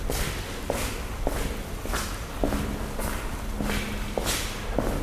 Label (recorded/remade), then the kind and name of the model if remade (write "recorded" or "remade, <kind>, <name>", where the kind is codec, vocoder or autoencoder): recorded